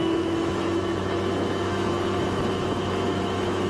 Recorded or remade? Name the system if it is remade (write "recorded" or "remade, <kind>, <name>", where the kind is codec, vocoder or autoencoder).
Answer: remade, autoencoder, DAC-VAE